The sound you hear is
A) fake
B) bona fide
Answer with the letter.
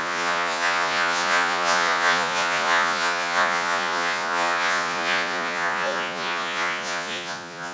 A